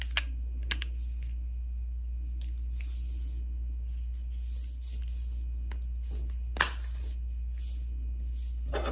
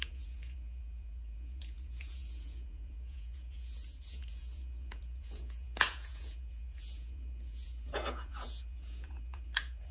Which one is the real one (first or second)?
first